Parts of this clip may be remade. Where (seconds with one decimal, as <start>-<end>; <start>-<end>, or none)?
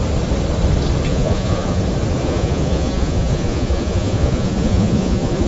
1.1-1.8; 2.2-5.5